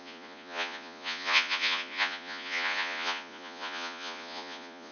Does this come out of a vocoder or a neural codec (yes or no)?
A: yes